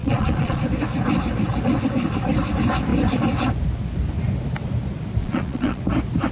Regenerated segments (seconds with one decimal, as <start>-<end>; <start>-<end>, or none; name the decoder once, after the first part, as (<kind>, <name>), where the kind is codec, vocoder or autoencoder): 0.0-0.6 (vocoder, Vocos); 5.2-5.8